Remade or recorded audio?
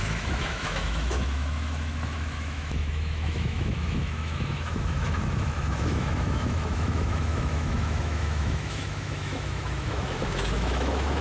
remade